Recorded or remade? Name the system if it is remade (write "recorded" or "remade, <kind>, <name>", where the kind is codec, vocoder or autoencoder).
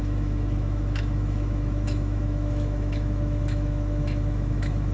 remade, autoencoder, DAC-VAE